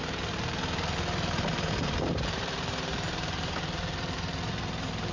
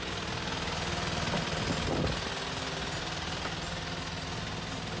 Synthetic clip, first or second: first